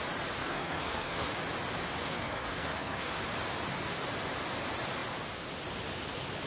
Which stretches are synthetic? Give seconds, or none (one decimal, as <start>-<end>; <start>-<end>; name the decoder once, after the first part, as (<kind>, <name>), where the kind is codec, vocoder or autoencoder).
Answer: 0.4-1.3 (codec, SNAC); 2.0-3.2